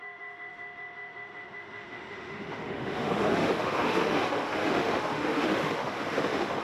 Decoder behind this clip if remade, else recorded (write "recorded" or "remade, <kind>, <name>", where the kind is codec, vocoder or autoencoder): remade, autoencoder, DAC-VAE